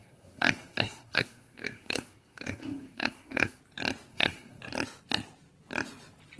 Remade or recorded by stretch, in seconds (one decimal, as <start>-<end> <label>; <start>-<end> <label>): 0.0-3.6 remade; 3.6-4.1 recorded; 4.1-4.6 remade; 4.6-6.4 recorded